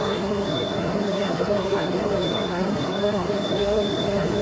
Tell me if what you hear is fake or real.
fake